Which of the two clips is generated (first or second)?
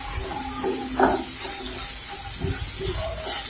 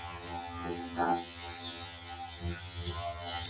second